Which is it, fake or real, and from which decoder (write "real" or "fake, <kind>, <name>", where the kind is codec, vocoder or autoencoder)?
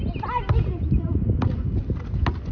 real